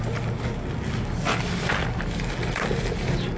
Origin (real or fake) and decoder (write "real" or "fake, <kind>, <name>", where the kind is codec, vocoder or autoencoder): real